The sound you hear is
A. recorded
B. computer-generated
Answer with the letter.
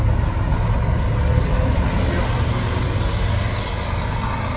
A